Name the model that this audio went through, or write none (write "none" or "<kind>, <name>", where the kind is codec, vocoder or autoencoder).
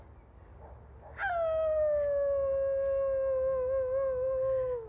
none